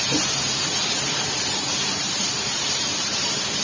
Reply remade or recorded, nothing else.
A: remade